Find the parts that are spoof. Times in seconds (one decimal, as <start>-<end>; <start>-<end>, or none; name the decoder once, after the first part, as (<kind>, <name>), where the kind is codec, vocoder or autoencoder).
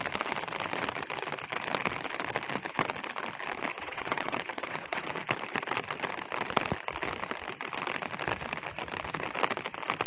3.7-5.2 (vocoder, WaveNeXt)